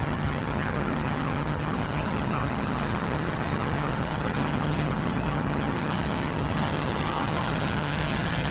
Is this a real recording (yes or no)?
no